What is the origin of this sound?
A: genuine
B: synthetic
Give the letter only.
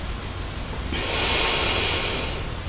A